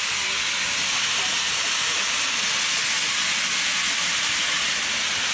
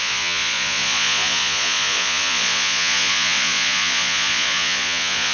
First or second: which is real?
first